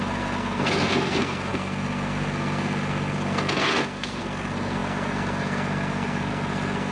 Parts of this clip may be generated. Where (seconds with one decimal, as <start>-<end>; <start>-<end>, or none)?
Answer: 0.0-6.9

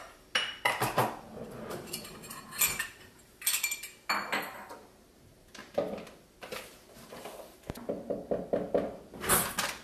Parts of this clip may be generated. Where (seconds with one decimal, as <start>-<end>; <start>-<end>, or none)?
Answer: none

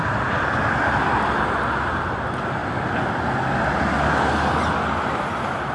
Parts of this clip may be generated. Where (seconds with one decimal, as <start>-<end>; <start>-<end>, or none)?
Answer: none

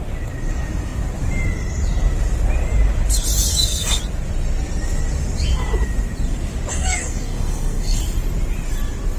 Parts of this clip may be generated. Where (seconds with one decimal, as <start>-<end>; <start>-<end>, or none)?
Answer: 3.5-4.0; 6.7-8.0

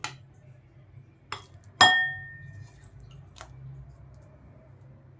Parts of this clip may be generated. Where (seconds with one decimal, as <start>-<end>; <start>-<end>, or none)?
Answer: none

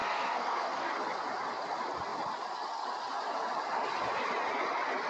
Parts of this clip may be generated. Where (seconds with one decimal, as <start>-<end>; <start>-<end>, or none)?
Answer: 0.0-0.9

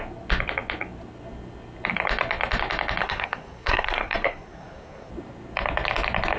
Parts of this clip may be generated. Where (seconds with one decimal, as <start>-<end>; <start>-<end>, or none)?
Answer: 3.0-5.1